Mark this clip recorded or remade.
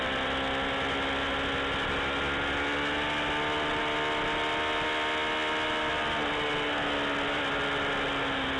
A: recorded